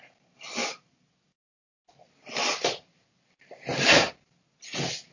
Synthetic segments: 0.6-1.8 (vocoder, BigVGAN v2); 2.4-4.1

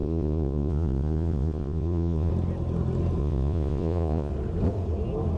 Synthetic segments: 0.0-2.3 (vocoder, Vocos); 3.2-4.3

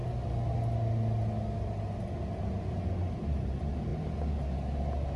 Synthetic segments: none

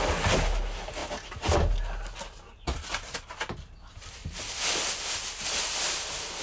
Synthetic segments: none